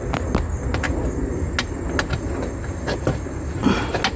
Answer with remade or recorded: recorded